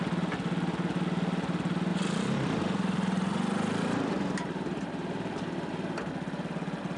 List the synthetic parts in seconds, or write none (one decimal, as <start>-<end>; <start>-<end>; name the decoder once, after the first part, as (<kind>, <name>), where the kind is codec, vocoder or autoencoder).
1.9-6.1 (vocoder, BigVGAN v2)